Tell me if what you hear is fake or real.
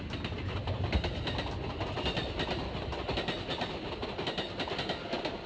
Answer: real